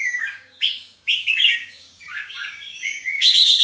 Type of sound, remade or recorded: remade